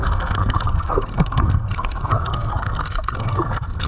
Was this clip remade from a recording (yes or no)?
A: yes